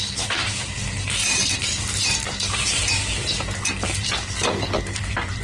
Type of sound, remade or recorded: remade